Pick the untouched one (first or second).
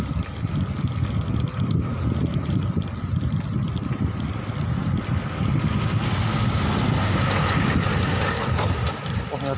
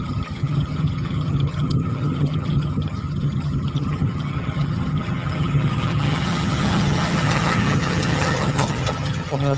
first